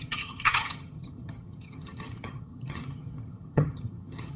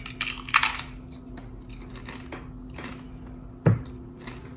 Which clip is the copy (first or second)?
first